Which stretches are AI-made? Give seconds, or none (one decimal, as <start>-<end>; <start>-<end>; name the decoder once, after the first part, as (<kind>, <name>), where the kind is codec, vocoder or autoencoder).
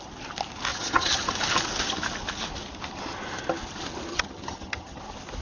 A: 0.7-1.3 (vocoder, HiFi-GAN); 4.1-5.0